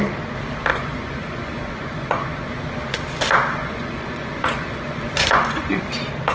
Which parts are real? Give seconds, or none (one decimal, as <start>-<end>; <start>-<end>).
0.0-0.7; 2.5-3.6; 5.8-6.3